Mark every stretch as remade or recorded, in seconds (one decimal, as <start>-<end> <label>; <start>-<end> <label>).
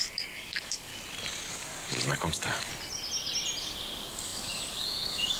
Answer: 0.0-0.9 remade; 0.9-1.5 recorded; 1.5-2.7 remade; 2.7-3.6 recorded; 3.6-5.4 remade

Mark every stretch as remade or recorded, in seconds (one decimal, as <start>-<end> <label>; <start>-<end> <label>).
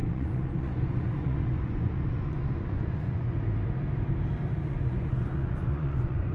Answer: 0.0-3.3 remade; 3.3-4.6 recorded; 4.6-6.3 remade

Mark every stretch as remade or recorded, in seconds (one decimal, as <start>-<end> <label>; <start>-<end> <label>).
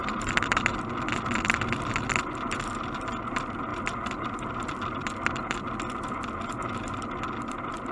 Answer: 0.0-2.1 remade; 2.1-7.9 recorded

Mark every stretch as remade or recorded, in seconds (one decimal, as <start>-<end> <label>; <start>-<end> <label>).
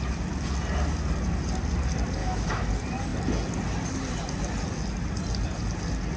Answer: 0.0-2.2 recorded; 2.2-2.7 remade; 2.7-6.2 recorded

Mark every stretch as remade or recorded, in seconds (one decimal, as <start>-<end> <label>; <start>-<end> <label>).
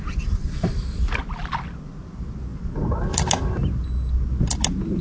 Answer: 0.0-5.0 recorded